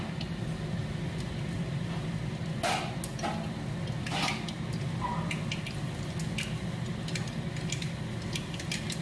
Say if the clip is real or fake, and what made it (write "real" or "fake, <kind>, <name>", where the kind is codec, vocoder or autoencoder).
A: real